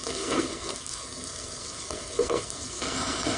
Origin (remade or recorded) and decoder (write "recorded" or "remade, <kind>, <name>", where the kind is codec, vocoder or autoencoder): remade, codec, SNAC